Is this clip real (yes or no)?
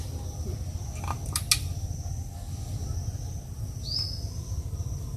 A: yes